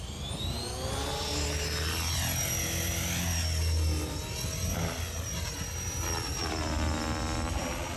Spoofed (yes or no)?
no